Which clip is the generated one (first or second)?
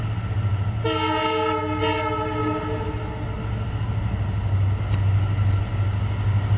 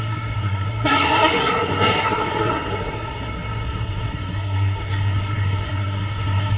second